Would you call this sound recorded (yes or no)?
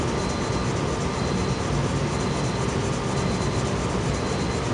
yes